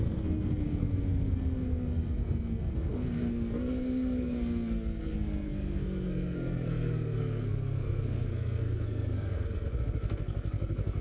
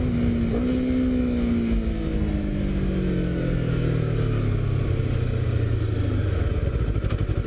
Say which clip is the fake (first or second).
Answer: first